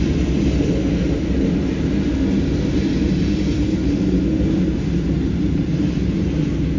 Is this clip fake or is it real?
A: real